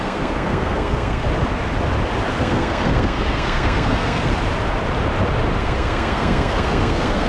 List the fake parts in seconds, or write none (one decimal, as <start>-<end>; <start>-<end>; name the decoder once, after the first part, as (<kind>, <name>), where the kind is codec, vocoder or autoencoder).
0.0-1.3 (codec, SNAC); 2.4-4.3; 5.6-7.3